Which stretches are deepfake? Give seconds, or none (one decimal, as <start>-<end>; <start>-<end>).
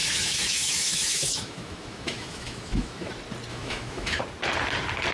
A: 0.0-3.1; 3.5-4.2